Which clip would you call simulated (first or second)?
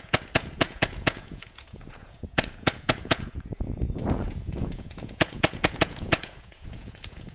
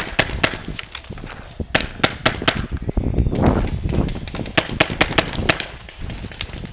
first